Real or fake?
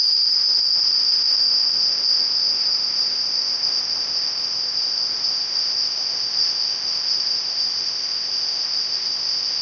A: fake